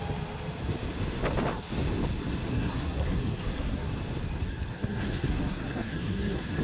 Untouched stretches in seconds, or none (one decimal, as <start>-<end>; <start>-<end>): 0.0-2.5; 3.9-4.7